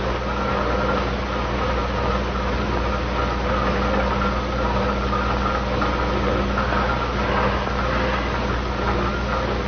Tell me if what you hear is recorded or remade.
recorded